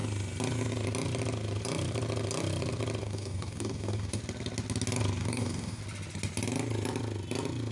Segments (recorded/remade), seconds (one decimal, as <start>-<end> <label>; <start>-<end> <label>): 0.0-3.0 recorded; 3.0-4.2 remade; 4.2-5.2 recorded; 5.2-5.8 remade; 5.8-7.7 recorded